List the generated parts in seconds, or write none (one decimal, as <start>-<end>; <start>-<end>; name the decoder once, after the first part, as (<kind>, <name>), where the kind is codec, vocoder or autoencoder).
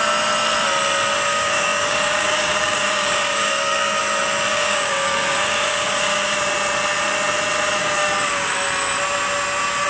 1.3-4.0 (codec, DAC); 4.5-6.4; 7.8-8.5